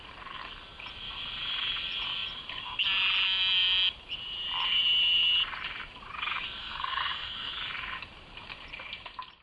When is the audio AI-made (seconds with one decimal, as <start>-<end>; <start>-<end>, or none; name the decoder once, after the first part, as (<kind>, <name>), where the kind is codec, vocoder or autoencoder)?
6.6-7.5 (codec, SNAC)